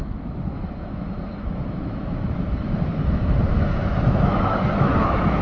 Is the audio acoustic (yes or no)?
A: no